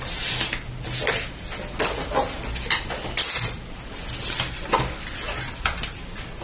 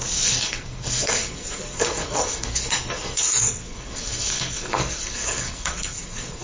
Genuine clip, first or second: first